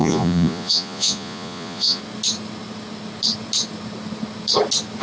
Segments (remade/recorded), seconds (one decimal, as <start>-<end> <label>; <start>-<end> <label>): 0.0-2.0 remade; 2.0-5.0 recorded